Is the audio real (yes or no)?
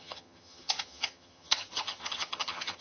no